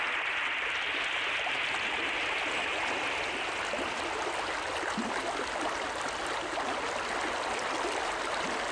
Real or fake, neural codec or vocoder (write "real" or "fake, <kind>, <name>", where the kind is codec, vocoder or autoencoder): real